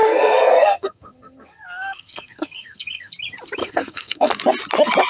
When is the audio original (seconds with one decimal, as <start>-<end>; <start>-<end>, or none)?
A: 3.1-3.6; 4.3-5.1